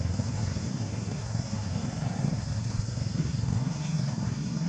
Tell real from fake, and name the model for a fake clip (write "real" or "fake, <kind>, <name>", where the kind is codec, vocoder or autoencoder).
fake, codec, SNAC